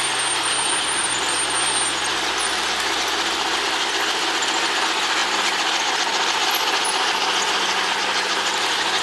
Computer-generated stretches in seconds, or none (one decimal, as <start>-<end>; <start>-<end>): none